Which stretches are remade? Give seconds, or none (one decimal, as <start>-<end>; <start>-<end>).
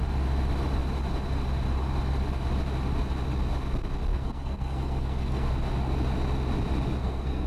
4.1-5.5; 7.0-7.5